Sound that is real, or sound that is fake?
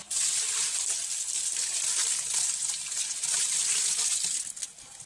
real